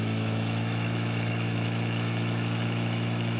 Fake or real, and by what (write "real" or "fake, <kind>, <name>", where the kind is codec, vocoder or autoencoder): fake, autoencoder, DAC-VAE